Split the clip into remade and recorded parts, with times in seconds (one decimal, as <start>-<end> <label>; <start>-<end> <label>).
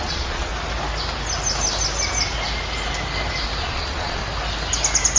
0.0-0.5 remade; 0.5-3.6 recorded; 3.6-4.2 remade; 4.2-5.2 recorded